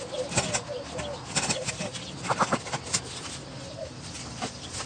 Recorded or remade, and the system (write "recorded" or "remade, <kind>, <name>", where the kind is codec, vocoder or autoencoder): recorded